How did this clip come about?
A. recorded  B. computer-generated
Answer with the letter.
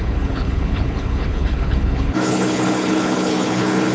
B